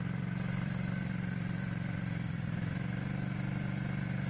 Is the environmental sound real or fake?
fake